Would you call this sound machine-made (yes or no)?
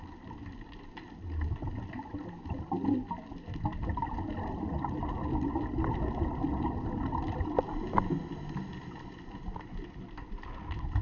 no